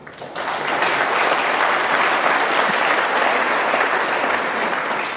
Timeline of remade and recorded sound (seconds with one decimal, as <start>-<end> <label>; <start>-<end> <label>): 0.0-5.2 recorded